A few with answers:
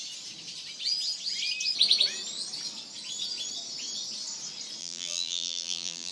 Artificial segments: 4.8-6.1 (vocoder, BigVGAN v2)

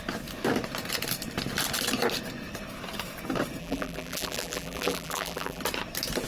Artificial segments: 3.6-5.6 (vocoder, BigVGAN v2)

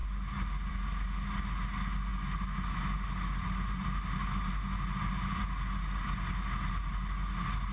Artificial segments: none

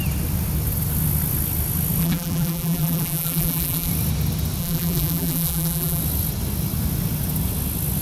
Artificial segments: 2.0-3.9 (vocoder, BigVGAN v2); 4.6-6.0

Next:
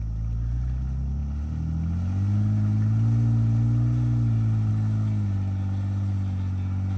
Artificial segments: none

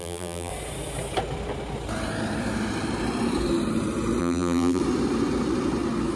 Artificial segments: 0.0-0.5 (vocoder, BigVGAN v2); 4.2-4.8

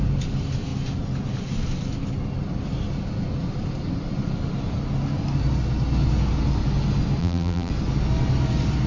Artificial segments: 7.2-7.7 (vocoder, BigVGAN v2)